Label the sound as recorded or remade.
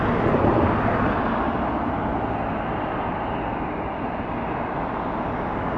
recorded